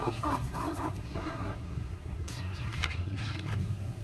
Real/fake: fake